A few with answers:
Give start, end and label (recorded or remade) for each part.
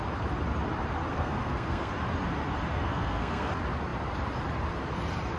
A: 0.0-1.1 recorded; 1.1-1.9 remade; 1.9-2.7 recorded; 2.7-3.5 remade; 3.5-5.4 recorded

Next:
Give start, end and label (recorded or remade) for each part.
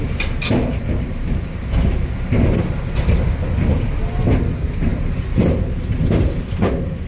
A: 0.0-7.1 recorded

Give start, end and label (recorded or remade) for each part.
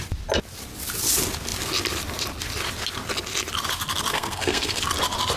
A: 0.0-4.1 recorded; 4.1-4.8 remade; 4.8-5.4 recorded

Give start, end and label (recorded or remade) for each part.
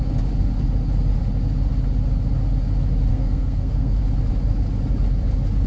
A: 0.0-3.1 recorded; 3.1-4.0 remade; 4.0-5.7 recorded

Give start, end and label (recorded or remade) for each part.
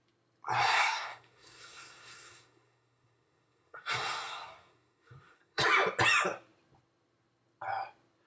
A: 0.0-0.6 recorded; 0.6-5.6 remade; 5.6-8.3 recorded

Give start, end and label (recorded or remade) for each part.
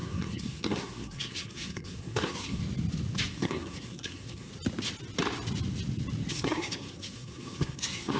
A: 0.0-2.6 remade; 2.6-3.3 recorded; 3.3-4.5 remade; 4.5-6.3 recorded; 6.3-8.2 remade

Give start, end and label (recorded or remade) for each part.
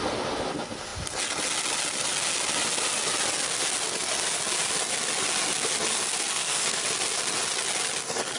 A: 0.0-6.3 recorded; 6.3-6.8 remade; 6.8-8.4 recorded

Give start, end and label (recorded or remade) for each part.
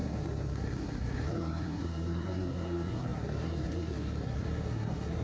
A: 0.0-5.2 remade